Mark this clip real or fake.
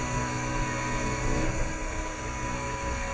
fake